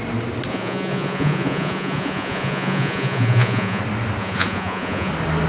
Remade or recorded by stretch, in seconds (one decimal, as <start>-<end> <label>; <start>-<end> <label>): 0.0-0.5 recorded; 0.5-3.8 remade; 3.8-4.2 recorded; 4.2-5.1 remade; 5.1-5.5 recorded